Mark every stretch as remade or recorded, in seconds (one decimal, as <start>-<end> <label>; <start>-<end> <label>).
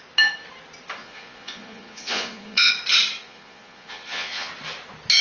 0.0-1.0 recorded; 1.0-2.7 remade; 2.7-3.2 recorded; 3.2-4.5 remade; 4.5-5.2 recorded